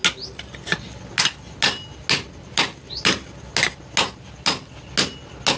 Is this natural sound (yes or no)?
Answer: yes